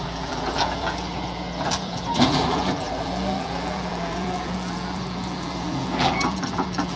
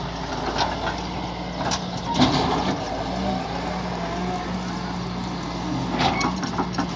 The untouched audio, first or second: second